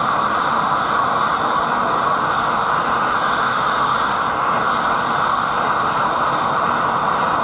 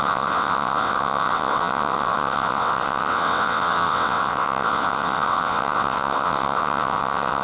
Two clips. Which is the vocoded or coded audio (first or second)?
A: second